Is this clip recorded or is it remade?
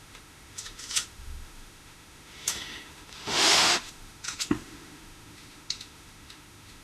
remade